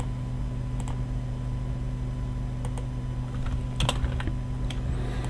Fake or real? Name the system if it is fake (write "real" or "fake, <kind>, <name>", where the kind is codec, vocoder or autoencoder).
real